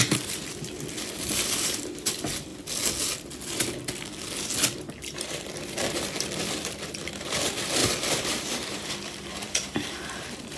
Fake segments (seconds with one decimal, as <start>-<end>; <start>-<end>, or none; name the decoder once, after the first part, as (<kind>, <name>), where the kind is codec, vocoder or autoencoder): 0.0-2.5 (vocoder, BigVGAN v2); 4.9-10.6